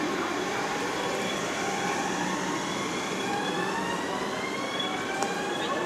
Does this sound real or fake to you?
fake